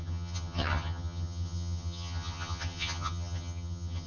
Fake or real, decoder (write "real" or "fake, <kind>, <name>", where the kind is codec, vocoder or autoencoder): fake, vocoder, HiFi-GAN